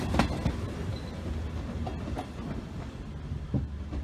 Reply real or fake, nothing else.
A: real